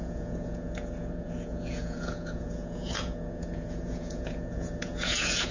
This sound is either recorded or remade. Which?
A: remade